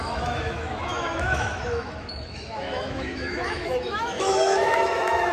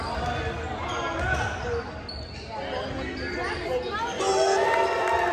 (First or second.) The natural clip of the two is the second